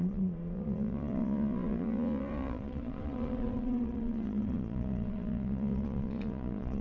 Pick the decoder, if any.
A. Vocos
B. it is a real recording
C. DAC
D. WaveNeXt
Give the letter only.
A